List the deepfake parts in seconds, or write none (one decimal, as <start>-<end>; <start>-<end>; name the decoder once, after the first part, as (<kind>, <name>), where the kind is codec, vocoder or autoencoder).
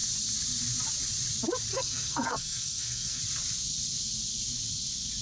1.7-3.2 (codec, SNAC)